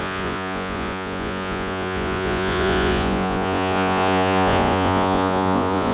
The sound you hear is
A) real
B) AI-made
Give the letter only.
B